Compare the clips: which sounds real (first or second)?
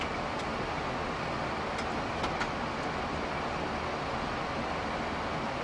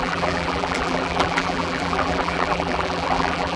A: first